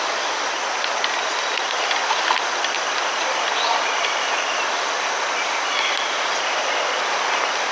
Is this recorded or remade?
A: recorded